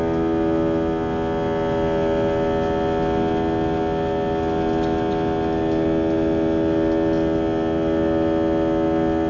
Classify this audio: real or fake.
real